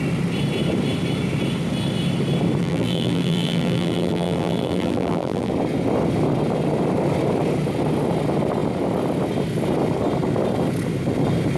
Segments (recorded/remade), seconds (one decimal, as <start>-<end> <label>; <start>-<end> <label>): 0.0-2.6 recorded; 2.6-5.5 remade; 5.5-11.6 recorded